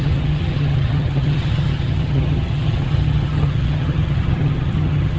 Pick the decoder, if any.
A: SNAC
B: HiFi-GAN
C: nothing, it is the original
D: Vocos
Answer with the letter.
B